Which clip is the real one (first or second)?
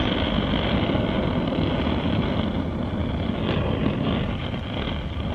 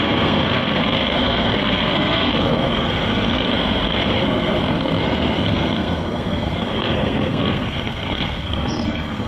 first